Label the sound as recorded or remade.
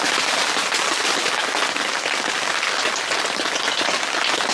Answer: recorded